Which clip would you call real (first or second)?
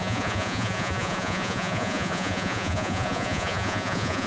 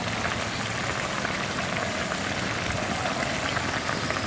second